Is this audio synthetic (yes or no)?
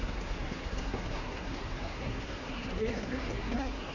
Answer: yes